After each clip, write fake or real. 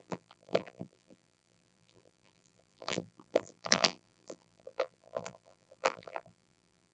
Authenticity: fake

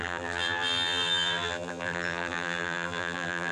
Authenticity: fake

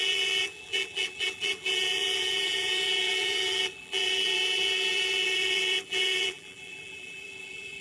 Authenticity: fake